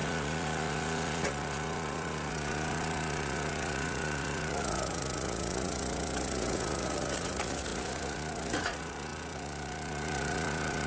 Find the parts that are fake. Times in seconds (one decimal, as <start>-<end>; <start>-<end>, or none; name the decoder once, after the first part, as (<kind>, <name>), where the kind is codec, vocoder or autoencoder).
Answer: 0.0-10.9 (vocoder, Vocos)